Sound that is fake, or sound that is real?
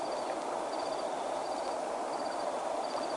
real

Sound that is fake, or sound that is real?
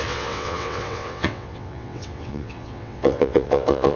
fake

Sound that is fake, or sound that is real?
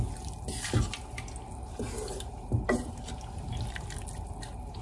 real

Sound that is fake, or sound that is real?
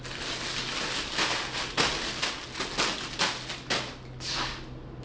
real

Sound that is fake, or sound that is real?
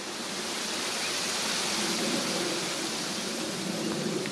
real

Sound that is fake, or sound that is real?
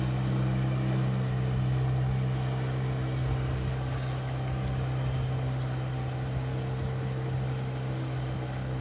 real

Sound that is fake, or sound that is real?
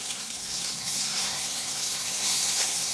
fake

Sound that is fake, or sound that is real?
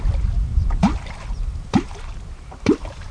fake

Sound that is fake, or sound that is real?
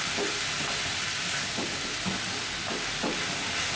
real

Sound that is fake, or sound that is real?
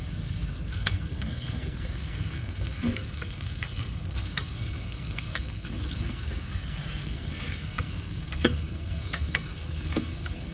fake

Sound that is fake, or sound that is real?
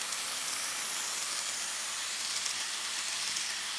fake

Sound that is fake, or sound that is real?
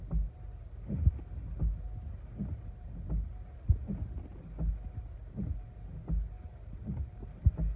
real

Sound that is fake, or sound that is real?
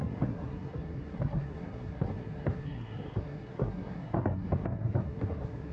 fake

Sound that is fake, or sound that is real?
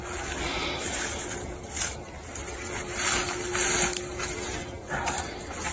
real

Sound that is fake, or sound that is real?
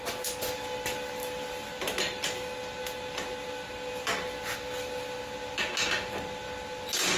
real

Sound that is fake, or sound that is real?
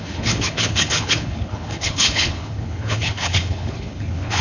fake